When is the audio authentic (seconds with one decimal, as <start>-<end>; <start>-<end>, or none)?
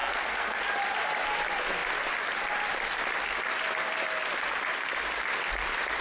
0.6-6.0